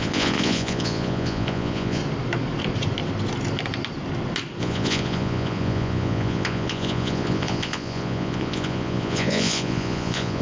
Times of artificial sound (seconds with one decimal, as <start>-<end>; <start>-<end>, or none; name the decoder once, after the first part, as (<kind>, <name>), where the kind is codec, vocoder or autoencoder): 0.0-2.0 (vocoder, Vocos); 4.6-10.4